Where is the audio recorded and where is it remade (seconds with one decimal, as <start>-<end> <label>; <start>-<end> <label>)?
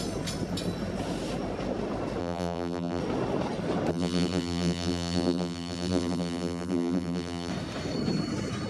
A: 0.0-2.2 recorded; 2.2-3.0 remade; 3.0-3.9 recorded; 3.9-7.5 remade; 7.5-8.7 recorded